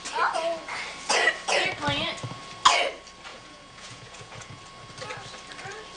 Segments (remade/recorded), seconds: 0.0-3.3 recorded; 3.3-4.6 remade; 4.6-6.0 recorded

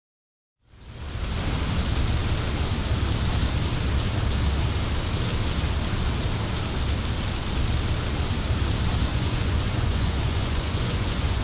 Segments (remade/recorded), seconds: 0.0-9.1 recorded; 9.1-11.4 remade

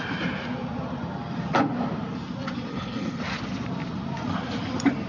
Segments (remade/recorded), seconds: 0.0-2.7 recorded; 2.7-3.2 remade; 3.2-5.1 recorded

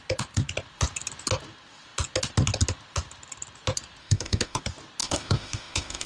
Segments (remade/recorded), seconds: 0.0-4.0 recorded; 4.0-4.6 remade; 4.6-5.0 recorded; 5.0-6.1 remade

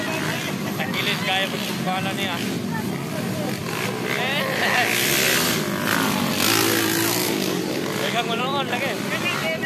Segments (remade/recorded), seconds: 0.0-7.2 recorded; 7.2-8.4 remade; 8.4-9.7 recorded